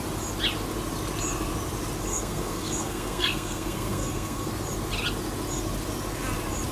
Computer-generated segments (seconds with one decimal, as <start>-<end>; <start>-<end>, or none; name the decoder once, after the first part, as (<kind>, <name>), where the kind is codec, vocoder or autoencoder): 2.1-4.5 (codec, SNAC)